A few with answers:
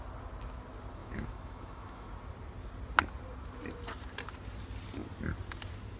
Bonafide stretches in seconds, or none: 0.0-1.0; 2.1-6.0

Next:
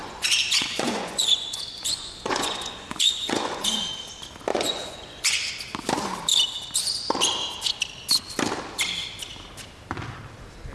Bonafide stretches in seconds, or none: 3.8-4.5; 5.5-10.7

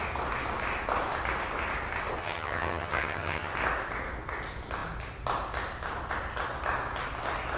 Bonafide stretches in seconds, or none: 0.0-2.2; 3.5-7.6

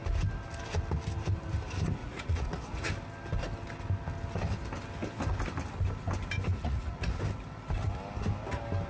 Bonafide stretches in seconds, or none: 0.0-2.0; 2.9-6.5; 7.2-8.9

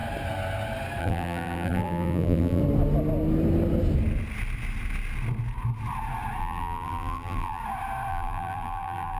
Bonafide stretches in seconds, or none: 0.0-1.0; 2.6-6.4; 7.6-8.1

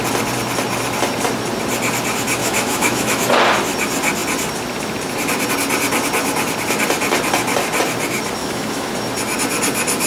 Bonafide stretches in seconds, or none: 0.0-2.4; 3.3-8.4; 8.9-10.1

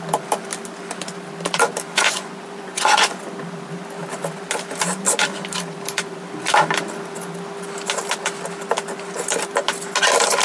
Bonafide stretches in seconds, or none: 0.0-1.9; 3.2-10.4